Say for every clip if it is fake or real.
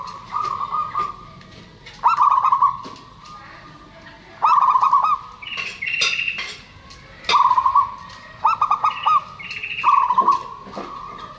real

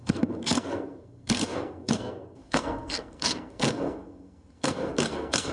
fake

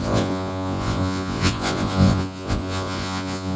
fake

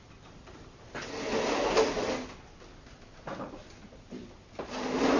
real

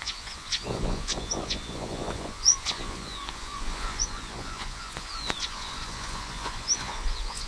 fake